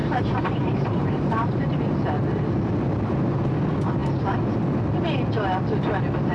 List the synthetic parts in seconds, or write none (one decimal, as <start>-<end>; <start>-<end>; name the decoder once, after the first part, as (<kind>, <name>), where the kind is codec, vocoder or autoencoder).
0.0-1.8 (vocoder, BigVGAN v2)